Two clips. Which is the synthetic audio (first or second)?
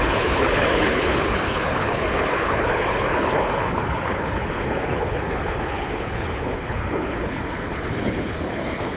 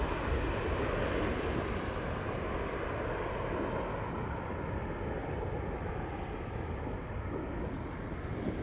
first